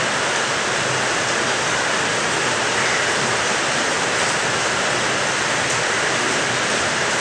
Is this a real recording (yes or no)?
yes